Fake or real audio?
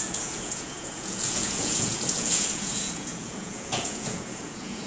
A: fake